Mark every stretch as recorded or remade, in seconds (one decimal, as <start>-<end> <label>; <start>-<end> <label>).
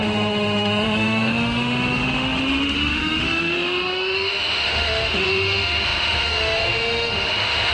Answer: 0.0-7.7 remade